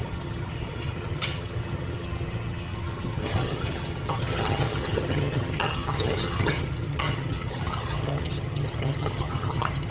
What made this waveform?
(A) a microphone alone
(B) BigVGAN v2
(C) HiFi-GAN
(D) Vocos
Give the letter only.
C